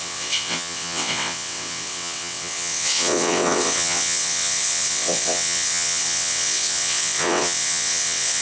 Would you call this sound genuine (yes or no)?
no